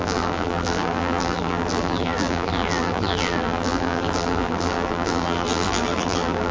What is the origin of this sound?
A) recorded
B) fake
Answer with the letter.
B